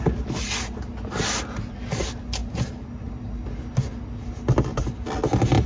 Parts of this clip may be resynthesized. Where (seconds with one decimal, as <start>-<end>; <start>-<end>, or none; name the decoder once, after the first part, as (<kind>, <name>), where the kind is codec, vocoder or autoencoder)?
none